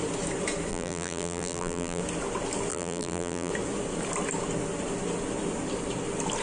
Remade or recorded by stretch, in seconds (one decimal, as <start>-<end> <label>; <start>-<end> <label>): 0.0-0.7 recorded; 0.7-2.0 remade; 2.0-2.7 recorded; 2.7-3.5 remade; 3.5-6.4 recorded